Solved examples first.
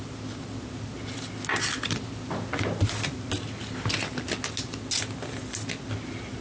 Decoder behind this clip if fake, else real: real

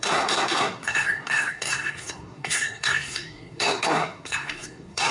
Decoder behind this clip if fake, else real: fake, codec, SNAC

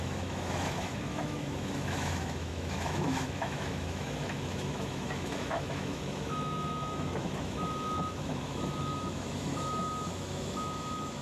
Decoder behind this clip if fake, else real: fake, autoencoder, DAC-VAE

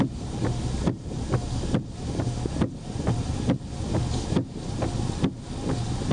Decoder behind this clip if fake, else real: real